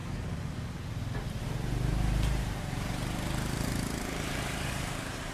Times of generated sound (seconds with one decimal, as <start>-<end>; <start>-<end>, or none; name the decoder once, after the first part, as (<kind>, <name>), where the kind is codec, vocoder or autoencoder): 1.4-5.3 (vocoder, BigVGAN v2)

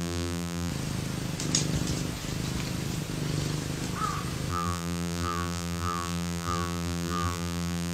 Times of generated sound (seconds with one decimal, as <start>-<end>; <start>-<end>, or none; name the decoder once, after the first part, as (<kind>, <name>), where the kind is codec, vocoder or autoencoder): 0.0-0.7 (vocoder, BigVGAN v2); 4.5-7.9

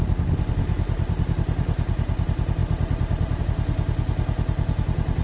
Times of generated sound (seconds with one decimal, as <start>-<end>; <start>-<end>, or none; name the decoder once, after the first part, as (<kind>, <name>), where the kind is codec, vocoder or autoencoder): none

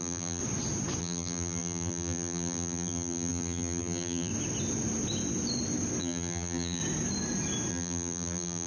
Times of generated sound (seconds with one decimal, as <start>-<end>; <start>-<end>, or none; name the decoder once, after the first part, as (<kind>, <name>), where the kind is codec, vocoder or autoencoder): 0.0-0.4 (vocoder, BigVGAN v2); 1.0-4.3; 6.0-6.8; 7.7-8.7

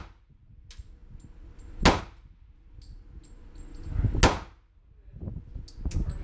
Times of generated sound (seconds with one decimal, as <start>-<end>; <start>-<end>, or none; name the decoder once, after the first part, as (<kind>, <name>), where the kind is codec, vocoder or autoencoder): none

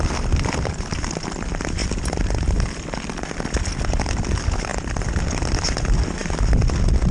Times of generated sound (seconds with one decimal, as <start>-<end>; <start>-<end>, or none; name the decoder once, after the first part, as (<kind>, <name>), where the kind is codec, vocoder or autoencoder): none

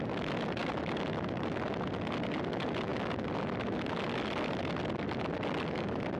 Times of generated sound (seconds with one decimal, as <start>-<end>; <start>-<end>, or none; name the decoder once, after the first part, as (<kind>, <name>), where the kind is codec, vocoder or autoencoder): none

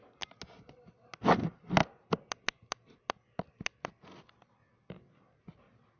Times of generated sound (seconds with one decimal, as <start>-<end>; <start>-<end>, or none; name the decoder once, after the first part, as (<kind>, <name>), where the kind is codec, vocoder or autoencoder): none